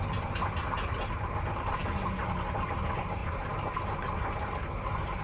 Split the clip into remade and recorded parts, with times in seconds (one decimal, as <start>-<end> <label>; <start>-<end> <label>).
0.0-5.2 recorded